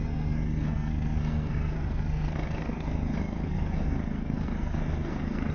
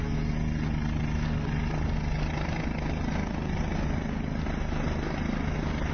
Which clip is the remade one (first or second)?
first